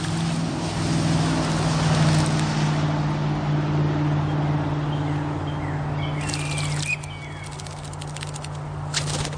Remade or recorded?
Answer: recorded